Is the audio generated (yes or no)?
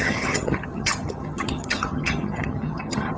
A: yes